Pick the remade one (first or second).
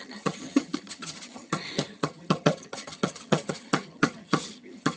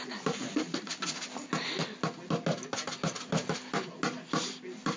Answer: first